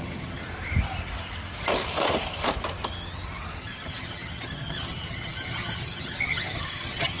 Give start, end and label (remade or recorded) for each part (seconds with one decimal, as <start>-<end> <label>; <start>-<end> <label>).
0.0-0.4 remade; 0.4-3.6 recorded; 3.6-7.2 remade